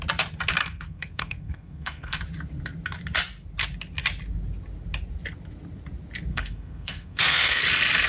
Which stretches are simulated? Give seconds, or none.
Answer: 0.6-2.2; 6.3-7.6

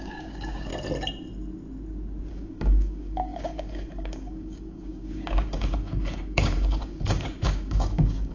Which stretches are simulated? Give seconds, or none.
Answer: 0.0-0.7; 2.3-8.3

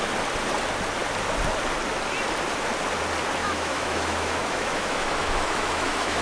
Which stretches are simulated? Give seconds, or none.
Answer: 3.4-6.2

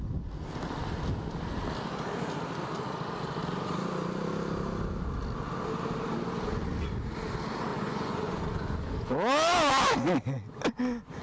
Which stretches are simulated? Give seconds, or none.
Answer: 7.7-8.9

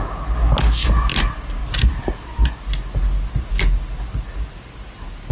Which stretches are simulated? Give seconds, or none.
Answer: none

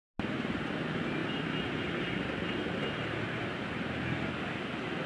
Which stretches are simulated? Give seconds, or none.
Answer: 1.2-4.3

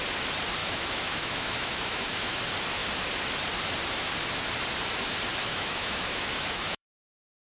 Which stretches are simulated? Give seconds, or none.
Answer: 0.6-2.4; 5.4-7.1